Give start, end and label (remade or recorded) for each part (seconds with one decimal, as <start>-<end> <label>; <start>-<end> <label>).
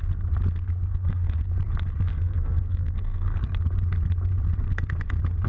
0.0-0.9 recorded; 0.9-1.4 remade; 1.4-2.1 recorded; 2.1-3.4 remade; 3.4-5.5 recorded